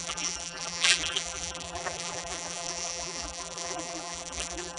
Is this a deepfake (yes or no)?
yes